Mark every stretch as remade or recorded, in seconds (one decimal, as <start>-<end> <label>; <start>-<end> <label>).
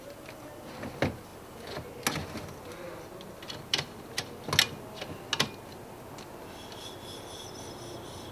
0.0-8.3 recorded